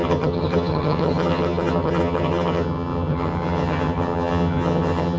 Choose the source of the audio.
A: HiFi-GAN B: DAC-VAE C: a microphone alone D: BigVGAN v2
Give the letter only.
A